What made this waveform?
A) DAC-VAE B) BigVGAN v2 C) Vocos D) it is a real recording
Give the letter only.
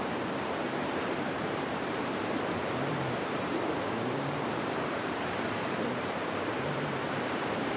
B